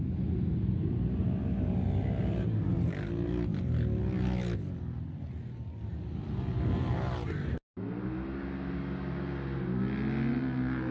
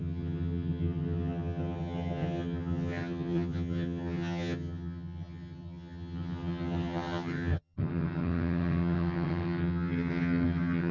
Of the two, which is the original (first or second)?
first